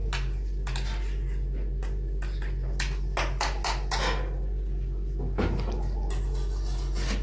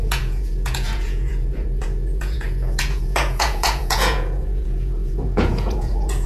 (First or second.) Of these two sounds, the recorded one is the first